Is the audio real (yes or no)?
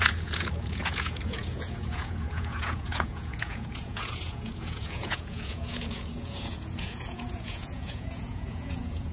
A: no